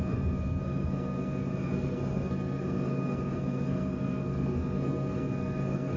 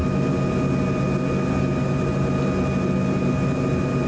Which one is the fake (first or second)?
first